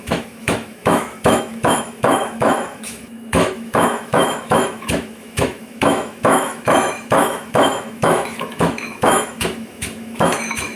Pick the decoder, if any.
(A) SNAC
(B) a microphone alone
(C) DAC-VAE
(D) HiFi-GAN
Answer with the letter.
C